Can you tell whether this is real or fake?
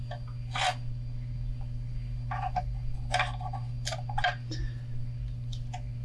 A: real